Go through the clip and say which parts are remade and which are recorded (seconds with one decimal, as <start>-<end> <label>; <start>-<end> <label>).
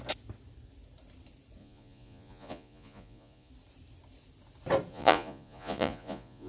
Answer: 0.0-1.6 recorded; 1.6-3.5 remade; 3.5-4.9 recorded; 4.9-6.5 remade